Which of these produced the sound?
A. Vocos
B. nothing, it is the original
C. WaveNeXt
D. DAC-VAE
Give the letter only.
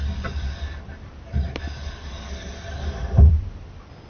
B